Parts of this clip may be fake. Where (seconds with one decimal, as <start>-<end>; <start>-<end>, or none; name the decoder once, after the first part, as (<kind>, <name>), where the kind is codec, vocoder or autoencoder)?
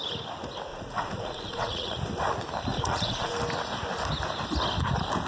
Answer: 0.7-2.0 (vocoder, Vocos); 2.7-3.3